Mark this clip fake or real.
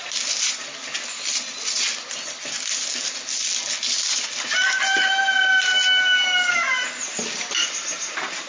real